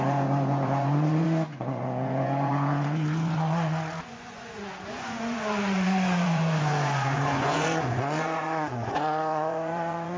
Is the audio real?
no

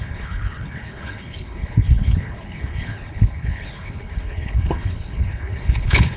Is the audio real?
no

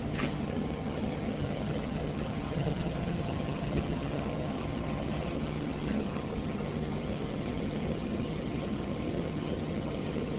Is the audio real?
no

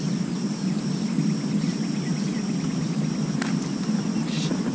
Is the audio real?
yes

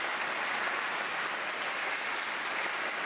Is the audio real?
yes